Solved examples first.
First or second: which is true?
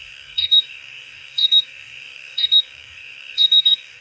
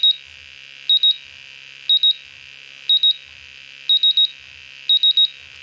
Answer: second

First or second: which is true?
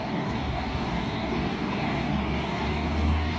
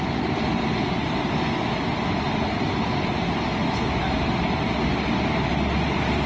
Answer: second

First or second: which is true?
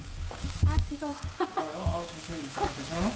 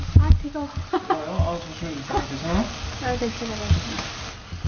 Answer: second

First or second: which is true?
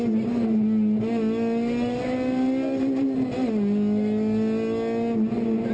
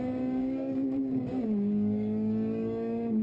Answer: first